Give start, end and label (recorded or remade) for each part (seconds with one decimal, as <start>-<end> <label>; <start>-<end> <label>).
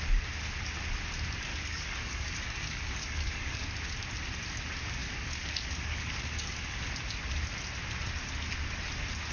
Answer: 0.0-1.5 recorded; 1.5-3.7 remade; 3.7-5.0 recorded; 5.0-6.9 remade; 6.9-9.3 recorded